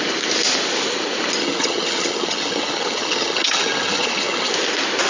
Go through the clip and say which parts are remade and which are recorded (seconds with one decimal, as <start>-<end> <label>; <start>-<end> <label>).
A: 0.0-1.4 recorded; 1.4-4.5 remade; 4.5-5.1 recorded